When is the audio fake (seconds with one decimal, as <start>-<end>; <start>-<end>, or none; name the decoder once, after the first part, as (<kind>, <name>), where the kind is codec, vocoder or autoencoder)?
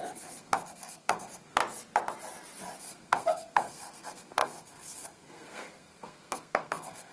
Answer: 0.0-1.6 (codec, SNAC); 2.8-7.1